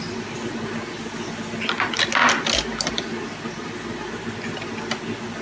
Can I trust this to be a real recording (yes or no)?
yes